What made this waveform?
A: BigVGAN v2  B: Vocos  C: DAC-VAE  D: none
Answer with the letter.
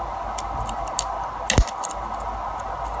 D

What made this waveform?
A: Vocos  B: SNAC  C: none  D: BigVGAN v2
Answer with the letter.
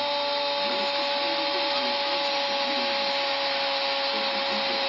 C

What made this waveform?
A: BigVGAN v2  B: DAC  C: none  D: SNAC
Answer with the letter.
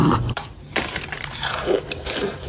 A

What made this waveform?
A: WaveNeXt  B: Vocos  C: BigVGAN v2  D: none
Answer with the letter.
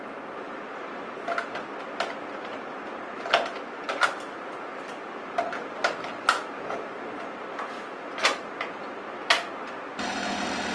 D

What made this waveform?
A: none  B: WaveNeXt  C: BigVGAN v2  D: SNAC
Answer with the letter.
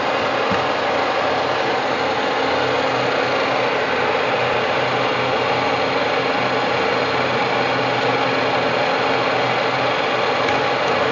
A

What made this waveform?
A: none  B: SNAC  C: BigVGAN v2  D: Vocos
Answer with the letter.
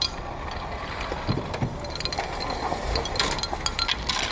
A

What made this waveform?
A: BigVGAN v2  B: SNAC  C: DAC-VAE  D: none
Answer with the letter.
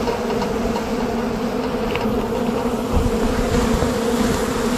D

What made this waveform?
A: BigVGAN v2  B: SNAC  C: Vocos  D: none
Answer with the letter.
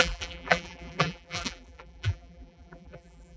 A